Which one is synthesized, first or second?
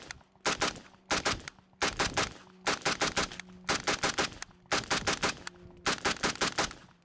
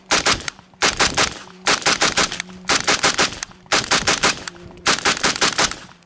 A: second